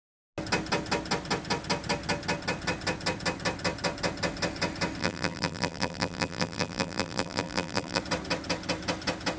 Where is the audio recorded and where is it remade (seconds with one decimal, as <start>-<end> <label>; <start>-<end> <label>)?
0.0-5.0 recorded; 5.0-8.0 remade; 8.0-9.4 recorded